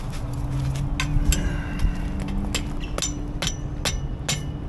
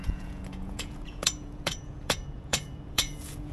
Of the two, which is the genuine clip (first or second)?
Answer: first